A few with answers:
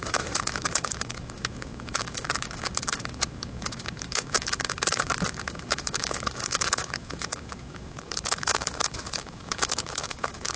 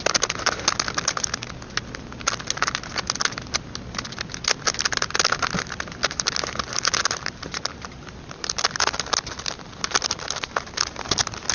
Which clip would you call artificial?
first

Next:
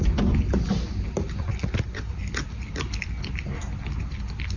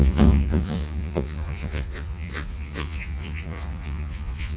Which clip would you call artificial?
second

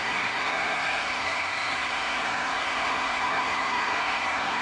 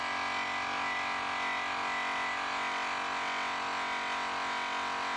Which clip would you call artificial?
first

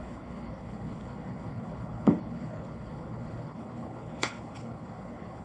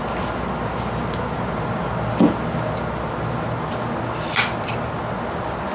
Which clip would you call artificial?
first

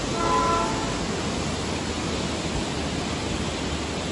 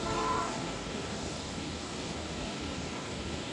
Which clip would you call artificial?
second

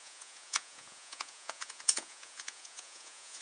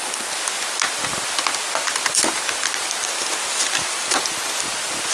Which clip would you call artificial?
first